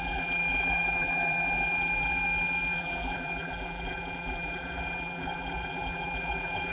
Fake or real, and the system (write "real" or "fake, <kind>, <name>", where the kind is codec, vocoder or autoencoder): fake, vocoder, BigVGAN v2